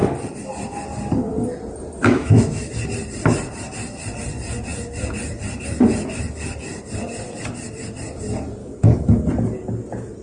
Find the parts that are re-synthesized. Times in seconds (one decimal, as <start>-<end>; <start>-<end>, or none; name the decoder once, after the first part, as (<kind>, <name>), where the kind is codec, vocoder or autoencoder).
2.0-2.7 (autoencoder, DAC-VAE); 8.6-9.2